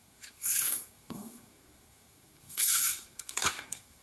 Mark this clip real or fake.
fake